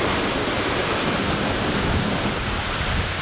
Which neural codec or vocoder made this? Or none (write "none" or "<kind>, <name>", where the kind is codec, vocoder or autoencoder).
vocoder, BigVGAN v2